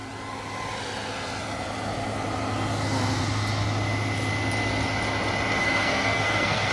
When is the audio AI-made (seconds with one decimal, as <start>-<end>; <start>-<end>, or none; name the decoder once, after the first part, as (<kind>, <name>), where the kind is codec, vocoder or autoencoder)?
5.6-6.7 (codec, SNAC)